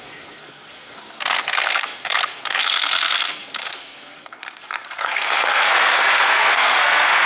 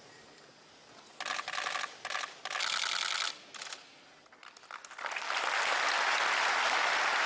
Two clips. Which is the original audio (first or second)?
second